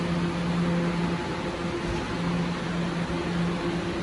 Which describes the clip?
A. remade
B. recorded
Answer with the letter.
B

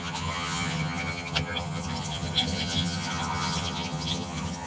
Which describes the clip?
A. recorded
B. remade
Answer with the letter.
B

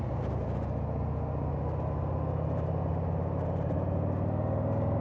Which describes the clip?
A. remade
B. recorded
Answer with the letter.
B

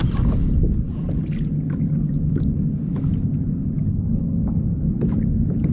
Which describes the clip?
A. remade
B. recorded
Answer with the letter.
B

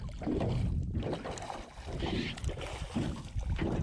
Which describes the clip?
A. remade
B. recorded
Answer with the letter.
B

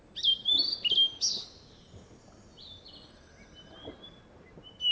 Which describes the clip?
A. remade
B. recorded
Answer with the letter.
B